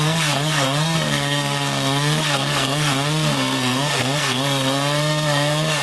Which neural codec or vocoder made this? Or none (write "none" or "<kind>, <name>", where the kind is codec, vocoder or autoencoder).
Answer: codec, SNAC